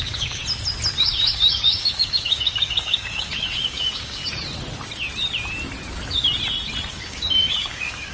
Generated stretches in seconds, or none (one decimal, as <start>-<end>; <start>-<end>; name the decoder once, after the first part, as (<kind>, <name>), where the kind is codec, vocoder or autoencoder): 0.0-0.4 (codec, DAC); 1.0-4.2; 6.9-8.1